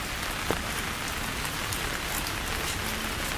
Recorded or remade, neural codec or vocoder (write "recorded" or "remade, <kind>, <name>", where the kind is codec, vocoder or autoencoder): recorded